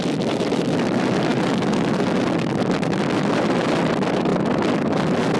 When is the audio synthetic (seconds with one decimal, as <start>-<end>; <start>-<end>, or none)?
none